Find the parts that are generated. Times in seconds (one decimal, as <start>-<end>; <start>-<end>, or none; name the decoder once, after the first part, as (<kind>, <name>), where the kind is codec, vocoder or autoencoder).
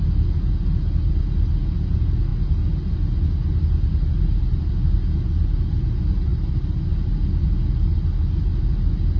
none